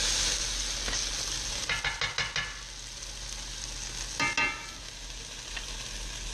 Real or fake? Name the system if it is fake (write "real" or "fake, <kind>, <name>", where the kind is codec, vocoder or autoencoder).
real